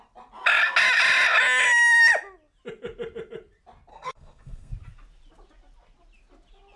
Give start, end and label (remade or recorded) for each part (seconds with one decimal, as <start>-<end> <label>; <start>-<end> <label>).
0.0-3.9 recorded; 3.9-4.7 remade; 4.7-6.8 recorded